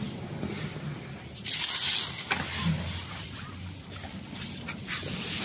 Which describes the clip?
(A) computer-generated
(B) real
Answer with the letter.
B